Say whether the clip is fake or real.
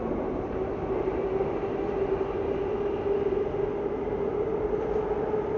real